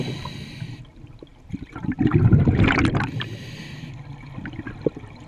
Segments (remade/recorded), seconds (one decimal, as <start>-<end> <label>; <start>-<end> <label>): 0.0-5.3 recorded